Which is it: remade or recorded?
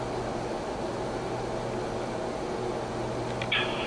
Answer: recorded